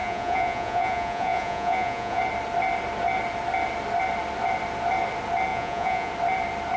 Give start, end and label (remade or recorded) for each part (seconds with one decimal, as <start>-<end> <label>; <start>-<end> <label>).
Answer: 0.0-2.2 remade; 2.2-5.5 recorded; 5.5-6.1 remade; 6.1-6.8 recorded